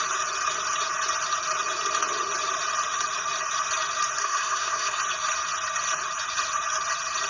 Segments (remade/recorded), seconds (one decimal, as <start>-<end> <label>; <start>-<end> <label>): 0.0-4.2 recorded; 4.2-5.0 remade; 5.0-7.3 recorded